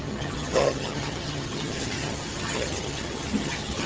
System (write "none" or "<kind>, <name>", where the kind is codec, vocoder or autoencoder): vocoder, HiFi-GAN